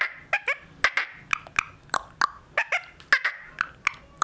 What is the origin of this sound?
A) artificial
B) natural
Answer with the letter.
B